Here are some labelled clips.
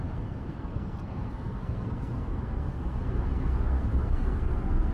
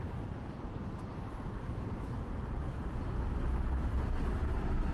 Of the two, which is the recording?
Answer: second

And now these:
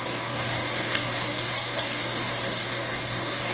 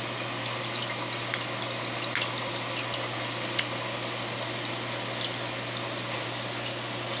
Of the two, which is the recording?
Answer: second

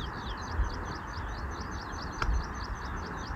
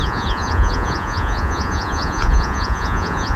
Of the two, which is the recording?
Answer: first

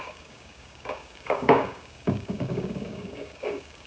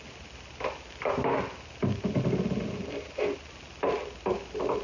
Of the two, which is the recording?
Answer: second